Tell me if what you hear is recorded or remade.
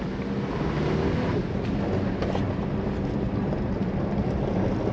recorded